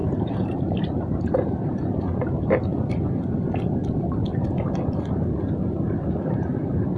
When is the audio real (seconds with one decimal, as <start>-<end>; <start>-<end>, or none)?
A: 2.7-6.3